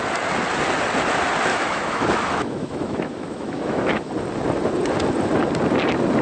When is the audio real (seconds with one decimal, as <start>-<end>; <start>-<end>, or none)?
0.0-1.5; 4.1-6.2